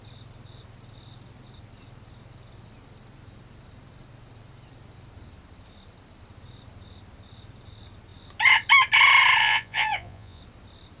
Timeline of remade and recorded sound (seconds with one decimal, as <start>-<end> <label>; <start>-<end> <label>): 0.0-9.4 recorded; 9.4-10.4 remade; 10.4-11.0 recorded